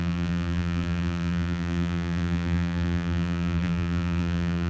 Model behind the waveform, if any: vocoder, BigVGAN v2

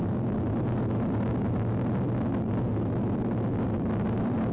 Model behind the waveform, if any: none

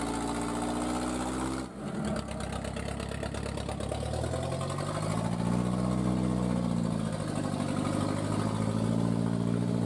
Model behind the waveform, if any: none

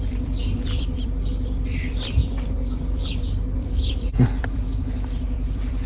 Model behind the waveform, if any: vocoder, BigVGAN v2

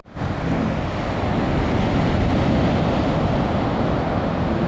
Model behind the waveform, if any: none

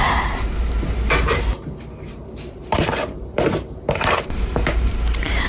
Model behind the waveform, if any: vocoder, BigVGAN v2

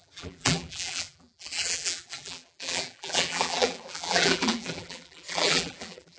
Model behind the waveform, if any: vocoder, BigVGAN v2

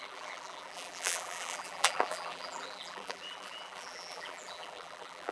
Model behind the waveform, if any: vocoder, BigVGAN v2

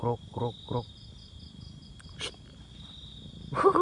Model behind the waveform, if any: none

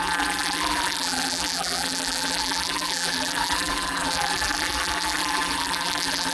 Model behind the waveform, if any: vocoder, BigVGAN v2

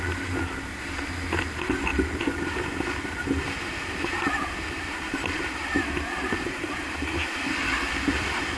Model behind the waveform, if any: none